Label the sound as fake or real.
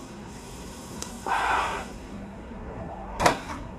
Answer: fake